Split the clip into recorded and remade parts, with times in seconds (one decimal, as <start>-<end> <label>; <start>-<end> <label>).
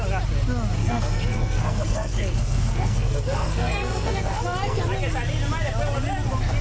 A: 0.0-0.8 recorded; 0.8-4.8 remade; 4.8-6.6 recorded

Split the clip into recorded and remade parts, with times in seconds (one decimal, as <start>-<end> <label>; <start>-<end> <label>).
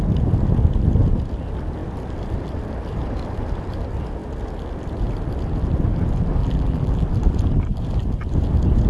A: 0.0-6.4 recorded; 6.4-7.1 remade; 7.1-8.9 recorded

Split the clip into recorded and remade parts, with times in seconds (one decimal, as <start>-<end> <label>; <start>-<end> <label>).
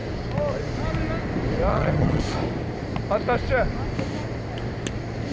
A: 0.0-1.7 recorded; 1.7-2.2 remade; 2.2-5.3 recorded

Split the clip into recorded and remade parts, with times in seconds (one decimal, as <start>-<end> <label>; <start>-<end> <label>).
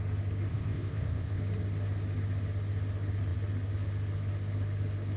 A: 0.0-0.5 recorded; 0.5-1.4 remade; 1.4-5.2 recorded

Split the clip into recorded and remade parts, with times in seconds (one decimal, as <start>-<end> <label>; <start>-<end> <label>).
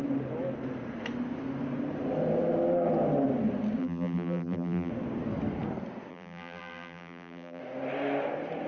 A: 0.0-3.8 recorded; 3.8-4.9 remade; 4.9-6.1 recorded; 6.1-7.6 remade; 7.6-8.7 recorded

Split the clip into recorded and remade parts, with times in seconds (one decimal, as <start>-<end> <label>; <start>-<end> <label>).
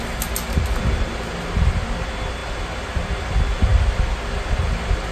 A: 0.0-5.1 recorded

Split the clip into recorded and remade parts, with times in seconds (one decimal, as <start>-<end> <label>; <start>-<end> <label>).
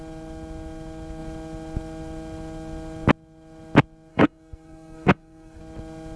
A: 0.0-4.1 recorded; 4.1-5.6 remade; 5.6-6.2 recorded